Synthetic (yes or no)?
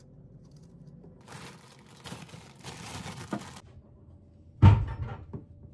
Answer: no